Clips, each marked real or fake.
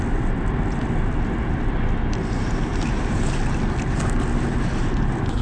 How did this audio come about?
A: real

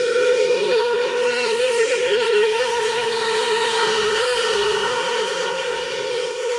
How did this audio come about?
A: fake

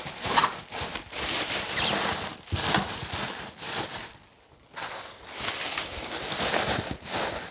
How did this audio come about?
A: fake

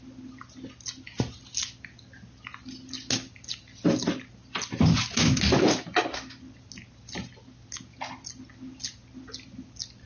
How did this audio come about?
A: real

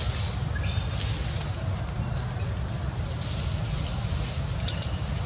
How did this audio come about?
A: real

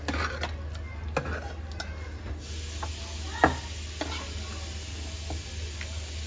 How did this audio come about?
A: real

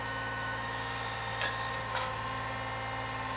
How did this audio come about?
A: real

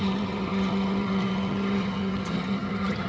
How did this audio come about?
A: fake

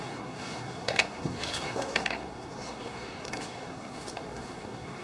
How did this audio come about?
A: fake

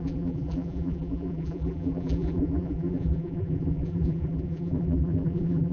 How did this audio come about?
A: fake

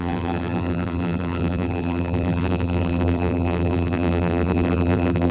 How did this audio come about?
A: fake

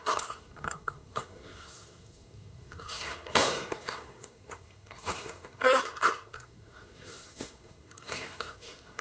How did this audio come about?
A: fake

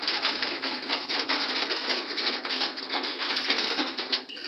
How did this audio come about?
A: fake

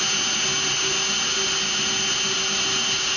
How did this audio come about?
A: real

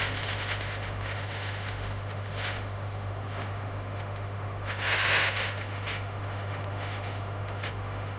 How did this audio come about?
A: fake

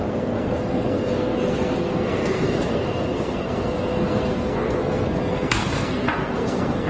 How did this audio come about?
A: fake